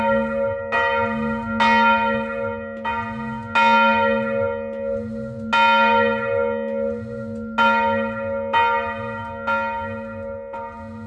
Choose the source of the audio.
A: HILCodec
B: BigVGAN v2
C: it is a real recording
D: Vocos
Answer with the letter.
C